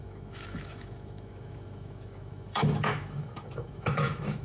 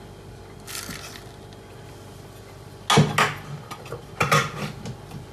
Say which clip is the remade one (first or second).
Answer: first